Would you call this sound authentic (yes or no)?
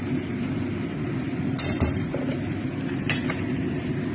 yes